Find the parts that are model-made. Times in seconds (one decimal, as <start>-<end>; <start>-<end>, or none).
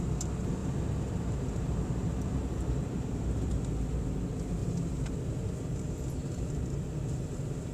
0.6-3.5